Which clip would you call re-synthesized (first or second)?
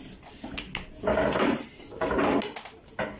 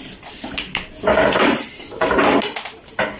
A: second